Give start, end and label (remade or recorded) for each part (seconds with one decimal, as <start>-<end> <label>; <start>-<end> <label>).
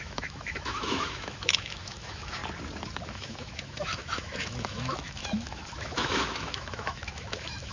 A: 0.0-2.4 remade; 2.4-3.0 recorded; 3.0-7.7 remade